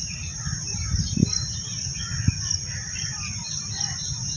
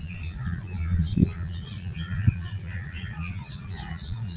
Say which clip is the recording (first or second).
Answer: first